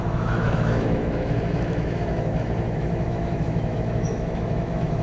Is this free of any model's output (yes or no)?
no